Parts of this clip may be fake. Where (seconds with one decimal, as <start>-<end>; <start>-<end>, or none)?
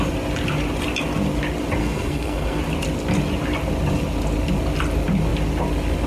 1.8-2.6